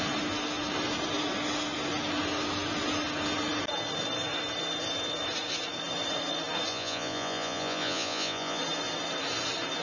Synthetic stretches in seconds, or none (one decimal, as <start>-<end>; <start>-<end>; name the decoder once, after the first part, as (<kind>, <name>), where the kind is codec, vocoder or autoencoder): 6.7-8.6 (vocoder, Vocos)